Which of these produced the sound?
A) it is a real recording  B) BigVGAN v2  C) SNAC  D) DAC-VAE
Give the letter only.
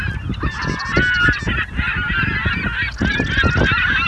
A